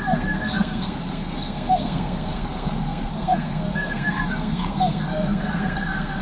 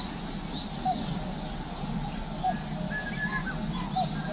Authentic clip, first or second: second